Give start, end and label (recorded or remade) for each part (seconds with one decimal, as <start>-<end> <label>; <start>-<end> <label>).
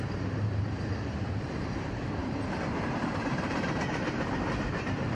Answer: 0.0-5.1 remade